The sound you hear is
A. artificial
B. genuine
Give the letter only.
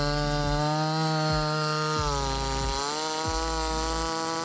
B